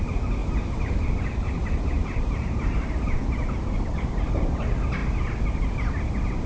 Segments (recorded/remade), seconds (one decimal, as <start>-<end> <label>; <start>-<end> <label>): 0.0-0.4 recorded; 0.4-1.0 remade; 1.0-1.6 recorded; 1.6-3.1 remade; 3.1-6.5 recorded